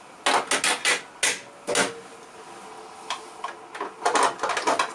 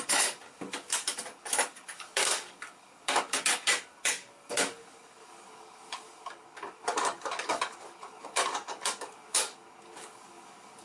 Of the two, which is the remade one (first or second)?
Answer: second